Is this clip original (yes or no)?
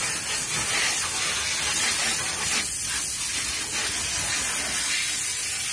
yes